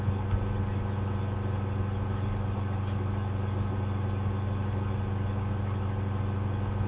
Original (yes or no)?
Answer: yes